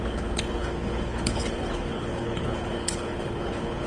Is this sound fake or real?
fake